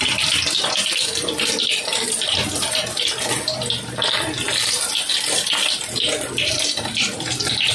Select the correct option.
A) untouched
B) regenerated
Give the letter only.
A